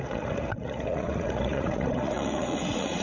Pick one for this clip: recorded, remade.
remade